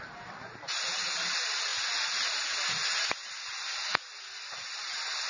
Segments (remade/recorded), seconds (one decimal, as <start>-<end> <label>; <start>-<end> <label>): 0.0-5.3 recorded